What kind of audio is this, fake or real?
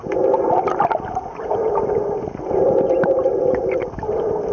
real